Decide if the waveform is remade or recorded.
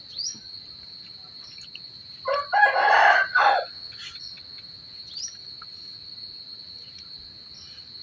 recorded